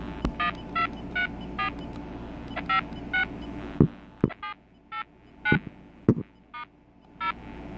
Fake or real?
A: real